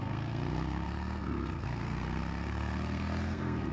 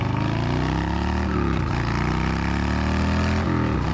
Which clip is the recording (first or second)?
second